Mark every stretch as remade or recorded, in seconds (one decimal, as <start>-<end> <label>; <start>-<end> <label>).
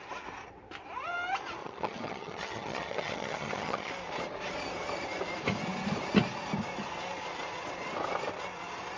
0.0-1.6 recorded; 1.6-3.9 remade; 3.9-9.0 recorded